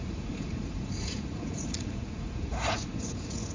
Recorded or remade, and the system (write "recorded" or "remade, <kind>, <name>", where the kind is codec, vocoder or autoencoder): remade, vocoder, Vocos